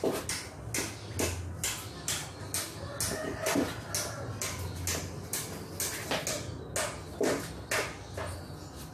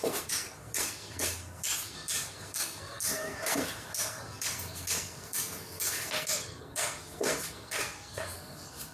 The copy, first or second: second